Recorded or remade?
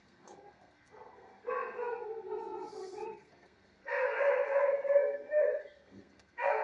remade